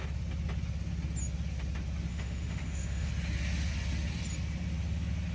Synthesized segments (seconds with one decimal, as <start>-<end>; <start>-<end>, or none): 2.1-3.1